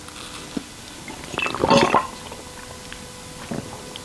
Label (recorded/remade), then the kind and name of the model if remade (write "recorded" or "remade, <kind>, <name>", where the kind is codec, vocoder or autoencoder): recorded